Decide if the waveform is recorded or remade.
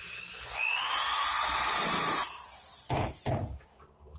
recorded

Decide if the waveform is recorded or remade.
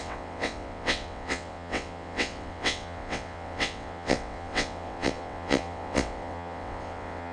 remade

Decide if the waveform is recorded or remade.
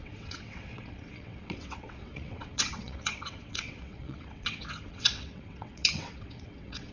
remade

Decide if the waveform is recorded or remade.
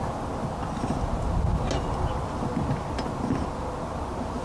recorded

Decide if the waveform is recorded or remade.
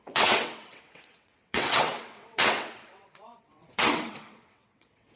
remade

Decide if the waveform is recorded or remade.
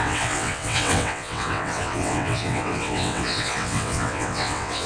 remade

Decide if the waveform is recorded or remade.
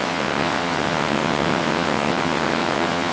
remade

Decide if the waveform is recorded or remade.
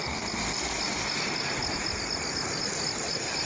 recorded